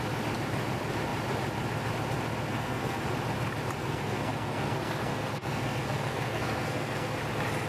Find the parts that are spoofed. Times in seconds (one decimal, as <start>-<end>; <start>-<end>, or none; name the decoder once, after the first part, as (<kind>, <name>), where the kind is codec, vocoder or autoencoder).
2.5-3.0 (codec, SNAC); 3.8-7.2